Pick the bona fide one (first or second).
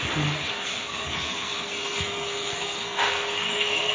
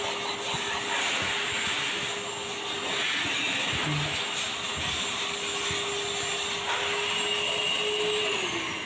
second